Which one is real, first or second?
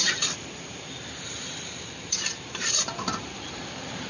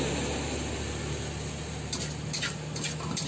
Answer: second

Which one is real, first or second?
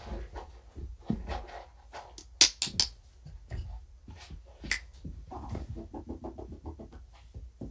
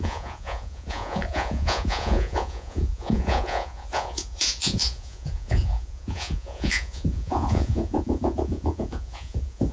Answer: first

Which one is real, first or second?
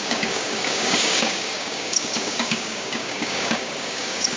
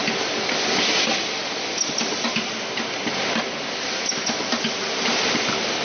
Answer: second